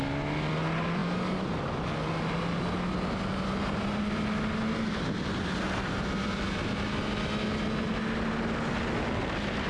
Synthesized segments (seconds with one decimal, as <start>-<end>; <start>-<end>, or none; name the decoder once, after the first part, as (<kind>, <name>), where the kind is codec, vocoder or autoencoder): none